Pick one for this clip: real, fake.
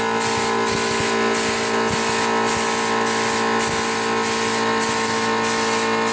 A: real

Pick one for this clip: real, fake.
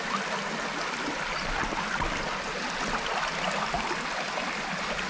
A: real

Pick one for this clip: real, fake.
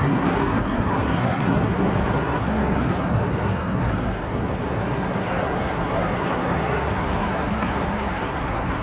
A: fake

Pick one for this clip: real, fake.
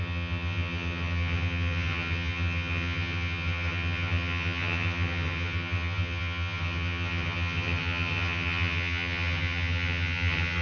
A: fake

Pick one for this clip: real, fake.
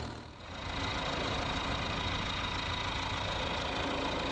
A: real